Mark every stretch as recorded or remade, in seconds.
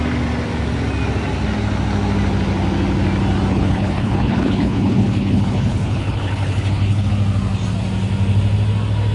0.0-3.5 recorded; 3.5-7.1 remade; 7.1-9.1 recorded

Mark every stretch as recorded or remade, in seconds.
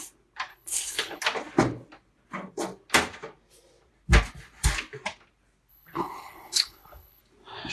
0.0-0.5 recorded; 0.5-1.2 remade; 1.2-5.7 recorded; 5.7-7.2 remade; 7.2-7.7 recorded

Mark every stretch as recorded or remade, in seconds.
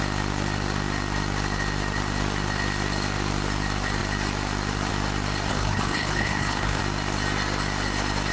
0.0-5.5 recorded; 5.5-6.8 remade; 6.8-8.3 recorded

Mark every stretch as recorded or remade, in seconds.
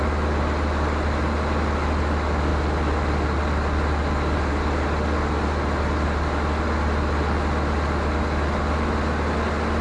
0.0-9.8 recorded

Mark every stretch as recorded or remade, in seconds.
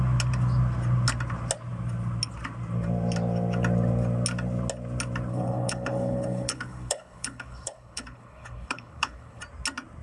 0.0-5.3 recorded; 5.3-9.4 remade; 9.4-10.0 recorded